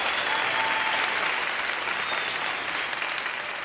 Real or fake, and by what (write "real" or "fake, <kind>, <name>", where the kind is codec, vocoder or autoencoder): real